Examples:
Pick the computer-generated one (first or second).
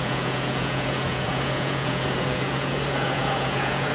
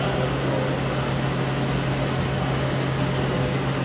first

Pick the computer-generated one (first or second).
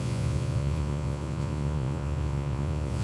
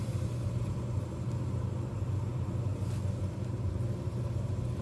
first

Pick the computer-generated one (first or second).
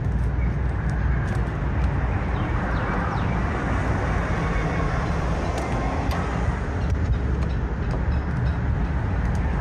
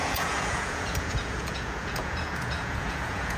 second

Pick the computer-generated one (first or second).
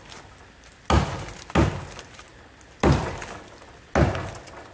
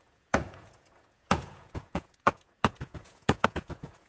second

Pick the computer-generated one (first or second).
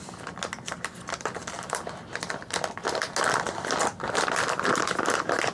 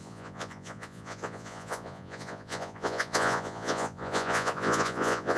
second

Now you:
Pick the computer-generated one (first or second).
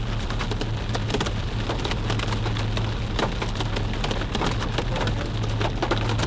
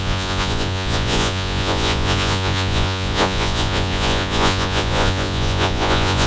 second